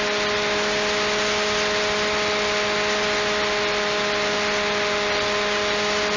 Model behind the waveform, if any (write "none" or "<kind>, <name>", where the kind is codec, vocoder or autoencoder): none